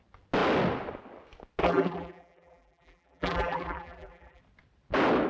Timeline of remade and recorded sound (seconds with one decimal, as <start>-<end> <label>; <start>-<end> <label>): 0.0-1.6 recorded; 1.6-4.4 remade; 4.4-5.3 recorded